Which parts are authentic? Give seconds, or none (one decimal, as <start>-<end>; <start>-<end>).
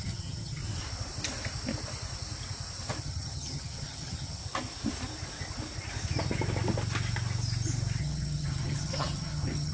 0.6-3.0; 4.4-8.0